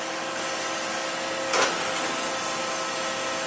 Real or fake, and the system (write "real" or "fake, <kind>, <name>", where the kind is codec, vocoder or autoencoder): real